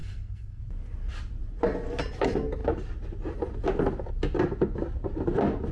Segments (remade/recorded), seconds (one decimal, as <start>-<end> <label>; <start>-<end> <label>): 0.0-0.6 remade; 0.6-5.7 recorded